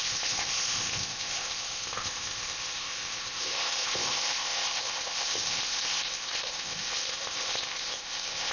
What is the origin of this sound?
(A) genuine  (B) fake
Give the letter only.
B